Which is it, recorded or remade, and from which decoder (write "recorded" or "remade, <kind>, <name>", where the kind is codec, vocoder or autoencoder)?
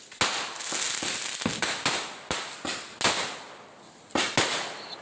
recorded